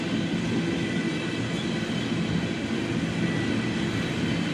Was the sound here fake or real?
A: real